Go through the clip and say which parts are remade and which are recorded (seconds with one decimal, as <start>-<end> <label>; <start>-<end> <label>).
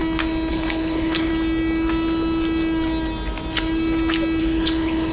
0.0-0.5 recorded; 0.5-1.3 remade; 1.3-4.4 recorded; 4.4-5.1 remade